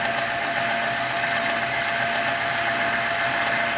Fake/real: real